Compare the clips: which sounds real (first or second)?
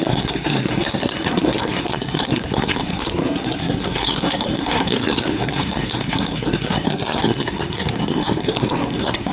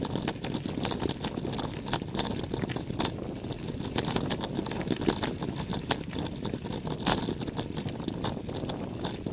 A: second